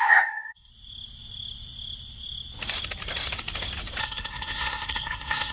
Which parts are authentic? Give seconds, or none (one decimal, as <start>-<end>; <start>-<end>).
0.7-4.0